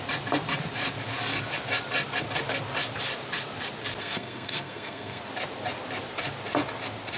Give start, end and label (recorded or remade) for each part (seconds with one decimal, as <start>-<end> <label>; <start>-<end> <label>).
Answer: 0.0-4.0 recorded; 4.0-5.2 remade; 5.2-7.2 recorded